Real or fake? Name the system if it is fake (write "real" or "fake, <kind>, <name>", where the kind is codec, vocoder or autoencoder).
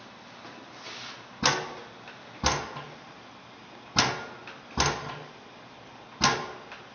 real